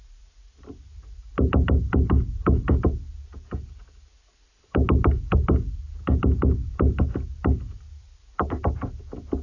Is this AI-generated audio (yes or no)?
no